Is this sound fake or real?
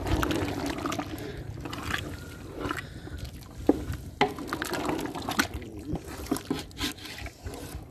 real